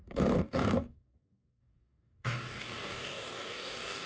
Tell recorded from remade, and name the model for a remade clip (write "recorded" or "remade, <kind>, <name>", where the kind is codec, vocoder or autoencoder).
remade, codec, DAC